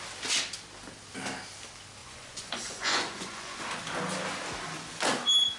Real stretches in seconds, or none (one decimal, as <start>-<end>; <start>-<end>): 0.0-2.0; 3.6-5.6